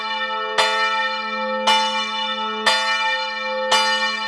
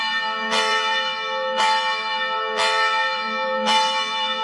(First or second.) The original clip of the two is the first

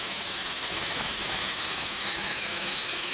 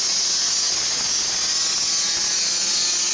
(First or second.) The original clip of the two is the second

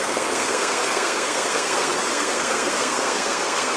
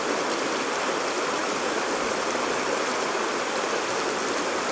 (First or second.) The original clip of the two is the second